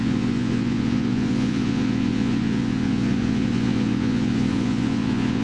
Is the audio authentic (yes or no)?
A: no